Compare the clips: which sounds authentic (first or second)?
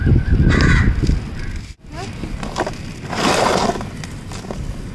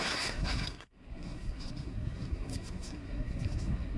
first